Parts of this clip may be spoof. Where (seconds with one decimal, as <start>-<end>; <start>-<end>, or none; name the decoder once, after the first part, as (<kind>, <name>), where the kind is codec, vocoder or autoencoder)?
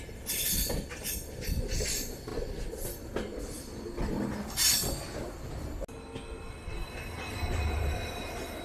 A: none